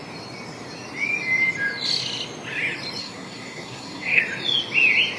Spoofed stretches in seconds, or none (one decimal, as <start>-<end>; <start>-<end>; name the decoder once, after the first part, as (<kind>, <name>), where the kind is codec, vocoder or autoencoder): 3.0-4.2 (codec, SNAC)